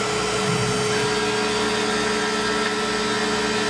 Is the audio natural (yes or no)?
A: yes